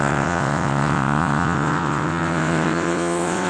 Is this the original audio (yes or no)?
no